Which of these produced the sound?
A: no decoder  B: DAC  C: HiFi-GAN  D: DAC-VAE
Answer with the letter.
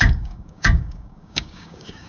B